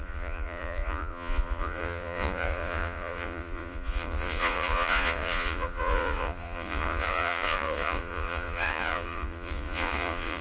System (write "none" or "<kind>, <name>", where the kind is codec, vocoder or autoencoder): vocoder, Vocos